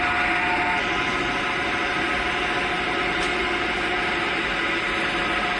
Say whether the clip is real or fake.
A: real